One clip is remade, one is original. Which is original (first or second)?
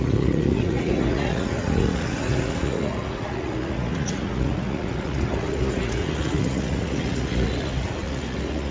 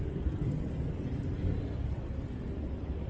second